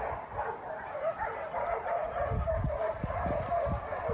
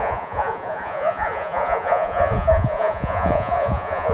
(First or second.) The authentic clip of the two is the first